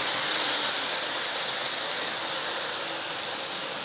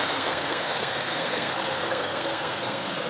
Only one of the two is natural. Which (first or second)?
first